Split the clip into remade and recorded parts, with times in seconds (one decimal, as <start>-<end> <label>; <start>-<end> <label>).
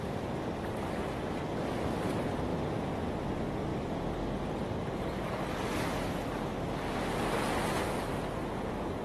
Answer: 0.0-9.0 recorded